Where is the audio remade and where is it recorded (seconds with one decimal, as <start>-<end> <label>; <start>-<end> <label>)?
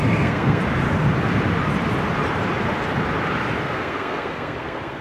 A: 0.0-0.6 remade; 0.6-3.6 recorded; 3.6-5.0 remade